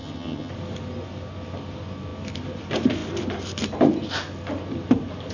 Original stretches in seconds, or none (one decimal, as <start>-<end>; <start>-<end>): 0.5-5.3